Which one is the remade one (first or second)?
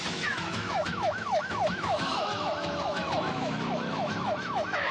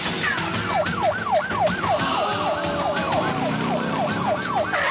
first